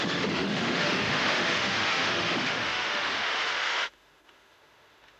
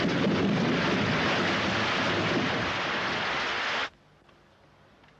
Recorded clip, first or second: second